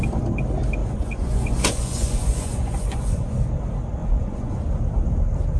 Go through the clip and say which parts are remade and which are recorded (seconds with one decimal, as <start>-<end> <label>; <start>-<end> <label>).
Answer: 0.0-0.8 recorded; 0.8-3.4 remade; 3.4-4.0 recorded; 4.0-4.6 remade; 4.6-5.6 recorded